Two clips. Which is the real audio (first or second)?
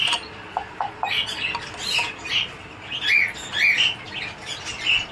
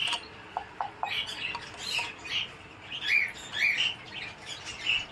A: first